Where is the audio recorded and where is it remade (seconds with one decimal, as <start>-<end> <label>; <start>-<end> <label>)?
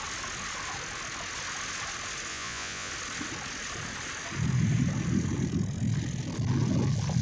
0.0-2.3 recorded; 2.3-2.9 remade; 2.9-7.2 recorded